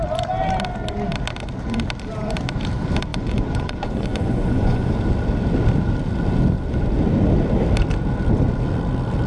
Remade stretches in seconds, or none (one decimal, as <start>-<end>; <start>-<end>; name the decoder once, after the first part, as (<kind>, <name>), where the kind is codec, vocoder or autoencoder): 3.1-4.9 (vocoder, Vocos)